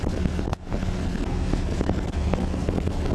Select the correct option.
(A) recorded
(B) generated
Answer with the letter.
B